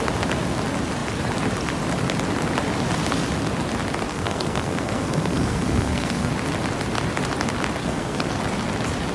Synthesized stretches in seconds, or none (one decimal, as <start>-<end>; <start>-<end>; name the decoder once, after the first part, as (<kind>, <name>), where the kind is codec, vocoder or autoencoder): 4.1-6.3 (codec, SNAC); 7.8-8.4